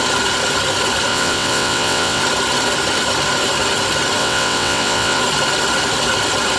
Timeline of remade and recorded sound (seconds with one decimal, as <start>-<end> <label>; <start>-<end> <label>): 0.0-1.1 recorded; 1.1-2.2 remade; 2.2-4.2 recorded; 4.2-5.2 remade; 5.2-6.6 recorded